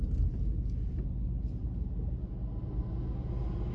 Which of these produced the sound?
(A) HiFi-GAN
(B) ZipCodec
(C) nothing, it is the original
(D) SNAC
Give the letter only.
C